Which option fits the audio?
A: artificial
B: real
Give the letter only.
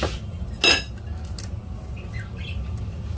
B